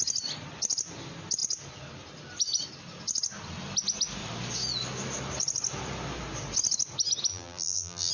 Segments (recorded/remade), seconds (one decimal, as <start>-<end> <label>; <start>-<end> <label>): 0.0-7.3 recorded; 7.3-8.1 remade